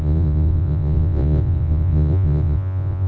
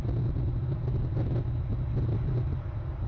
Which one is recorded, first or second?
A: second